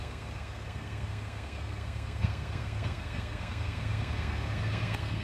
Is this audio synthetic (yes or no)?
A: yes